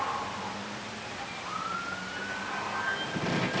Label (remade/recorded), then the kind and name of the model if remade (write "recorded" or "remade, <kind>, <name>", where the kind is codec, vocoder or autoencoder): recorded